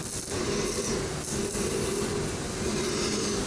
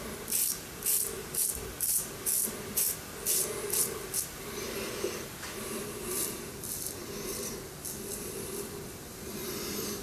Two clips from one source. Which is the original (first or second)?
first